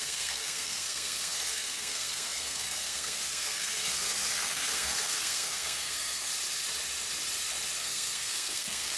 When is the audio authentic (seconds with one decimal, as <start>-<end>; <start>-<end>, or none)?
6.3-7.8